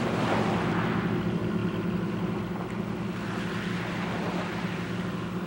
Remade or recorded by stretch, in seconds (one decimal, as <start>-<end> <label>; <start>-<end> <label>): 0.0-5.5 recorded